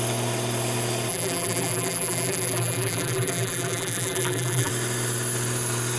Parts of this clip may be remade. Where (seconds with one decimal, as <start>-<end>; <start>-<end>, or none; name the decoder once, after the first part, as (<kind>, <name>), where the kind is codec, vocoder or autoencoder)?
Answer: 1.1-4.7 (vocoder, BigVGAN v2)